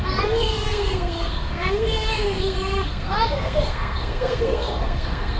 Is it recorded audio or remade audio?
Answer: remade